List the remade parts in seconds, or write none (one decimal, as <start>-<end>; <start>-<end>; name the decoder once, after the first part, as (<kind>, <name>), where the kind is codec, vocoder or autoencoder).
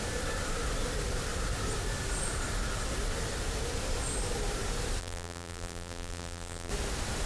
5.0-6.7 (vocoder, BigVGAN v2)